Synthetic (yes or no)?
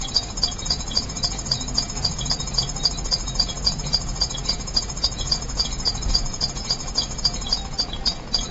yes